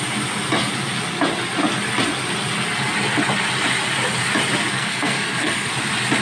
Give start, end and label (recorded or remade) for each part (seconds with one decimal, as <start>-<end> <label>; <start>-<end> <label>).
0.0-4.7 recorded; 4.7-5.7 remade; 5.7-6.2 recorded

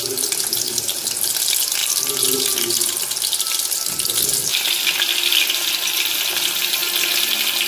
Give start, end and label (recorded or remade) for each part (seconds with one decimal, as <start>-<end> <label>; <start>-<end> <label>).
0.0-7.7 recorded

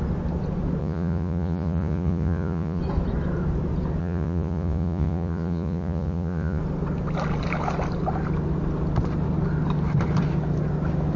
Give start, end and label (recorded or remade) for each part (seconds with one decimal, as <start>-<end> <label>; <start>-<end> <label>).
0.0-0.8 recorded; 0.8-2.8 remade; 2.8-4.0 recorded; 4.0-6.6 remade; 6.6-11.2 recorded

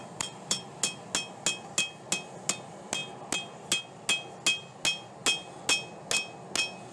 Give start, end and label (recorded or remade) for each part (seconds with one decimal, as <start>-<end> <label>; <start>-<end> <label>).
0.0-0.6 remade; 0.6-6.9 recorded

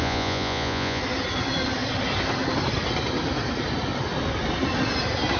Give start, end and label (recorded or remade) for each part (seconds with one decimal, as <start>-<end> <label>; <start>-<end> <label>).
0.0-1.0 remade; 1.0-5.4 recorded

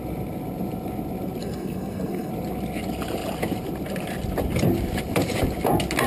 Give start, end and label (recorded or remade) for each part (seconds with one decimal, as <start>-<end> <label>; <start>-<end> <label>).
0.0-1.4 recorded; 1.4-2.3 remade; 2.3-6.1 recorded

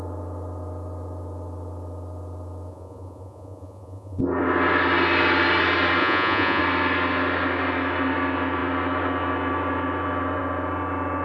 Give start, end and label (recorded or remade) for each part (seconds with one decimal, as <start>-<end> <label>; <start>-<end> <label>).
0.0-2.7 recorded; 2.7-4.2 remade; 4.2-6.0 recorded; 6.0-6.6 remade; 6.6-11.2 recorded

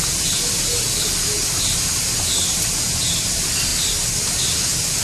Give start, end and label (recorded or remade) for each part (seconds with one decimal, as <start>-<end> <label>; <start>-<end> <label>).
0.0-5.0 recorded